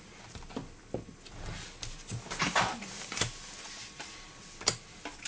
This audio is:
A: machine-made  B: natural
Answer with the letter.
B